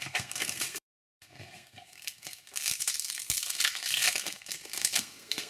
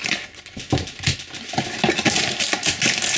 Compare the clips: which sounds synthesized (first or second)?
first